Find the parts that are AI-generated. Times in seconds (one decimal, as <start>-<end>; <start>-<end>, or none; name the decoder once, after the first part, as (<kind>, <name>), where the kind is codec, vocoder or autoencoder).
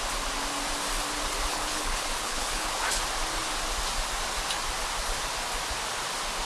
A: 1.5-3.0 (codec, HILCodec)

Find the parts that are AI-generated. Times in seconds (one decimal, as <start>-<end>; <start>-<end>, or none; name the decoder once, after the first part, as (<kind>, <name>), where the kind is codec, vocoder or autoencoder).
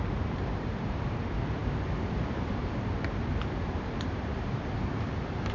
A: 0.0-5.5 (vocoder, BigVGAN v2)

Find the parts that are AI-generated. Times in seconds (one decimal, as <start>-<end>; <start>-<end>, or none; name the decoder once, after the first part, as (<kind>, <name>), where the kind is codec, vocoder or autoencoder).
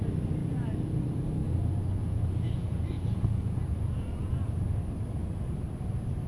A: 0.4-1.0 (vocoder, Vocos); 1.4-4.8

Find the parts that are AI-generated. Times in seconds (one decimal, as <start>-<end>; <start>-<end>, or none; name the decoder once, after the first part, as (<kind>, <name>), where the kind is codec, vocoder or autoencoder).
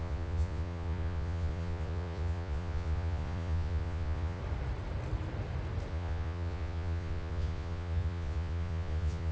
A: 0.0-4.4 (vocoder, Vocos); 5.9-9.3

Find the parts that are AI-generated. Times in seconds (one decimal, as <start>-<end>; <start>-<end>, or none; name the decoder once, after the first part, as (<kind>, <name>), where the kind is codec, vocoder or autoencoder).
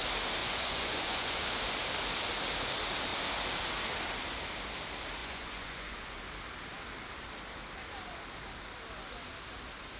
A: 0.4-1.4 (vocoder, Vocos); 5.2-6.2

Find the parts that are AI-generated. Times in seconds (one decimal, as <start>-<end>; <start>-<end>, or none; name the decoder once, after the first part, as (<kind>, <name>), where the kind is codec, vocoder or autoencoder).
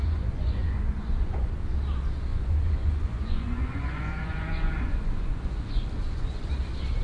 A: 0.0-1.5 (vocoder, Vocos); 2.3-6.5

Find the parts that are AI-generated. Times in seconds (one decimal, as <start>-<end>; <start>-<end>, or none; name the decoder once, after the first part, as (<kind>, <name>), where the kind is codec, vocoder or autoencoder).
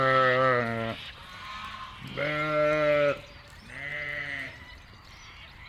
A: 3.9-5.1 (vocoder, BigVGAN v2)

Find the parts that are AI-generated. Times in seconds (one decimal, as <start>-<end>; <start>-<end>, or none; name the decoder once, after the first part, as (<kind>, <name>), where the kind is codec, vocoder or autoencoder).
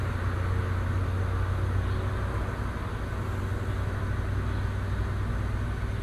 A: none